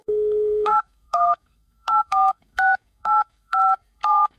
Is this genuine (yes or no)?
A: no